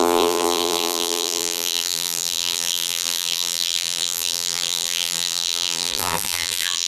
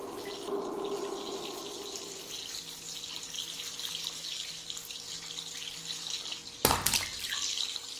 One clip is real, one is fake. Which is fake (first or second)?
first